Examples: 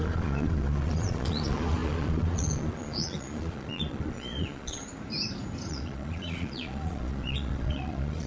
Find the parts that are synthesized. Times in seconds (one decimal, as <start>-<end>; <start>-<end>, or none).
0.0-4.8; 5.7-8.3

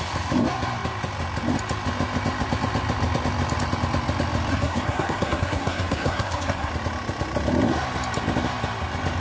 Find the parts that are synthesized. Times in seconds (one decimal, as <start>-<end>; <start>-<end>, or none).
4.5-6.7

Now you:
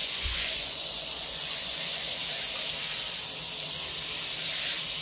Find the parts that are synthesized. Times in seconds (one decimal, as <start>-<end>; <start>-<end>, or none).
0.0-2.1